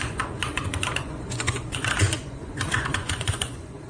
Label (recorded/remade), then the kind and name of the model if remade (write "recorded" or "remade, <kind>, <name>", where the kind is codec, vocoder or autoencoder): remade, vocoder, Vocos